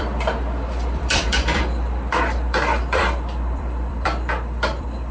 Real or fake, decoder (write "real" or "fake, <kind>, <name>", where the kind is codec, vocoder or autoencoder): fake, vocoder, BigVGAN v2